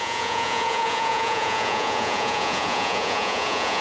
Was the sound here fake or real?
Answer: fake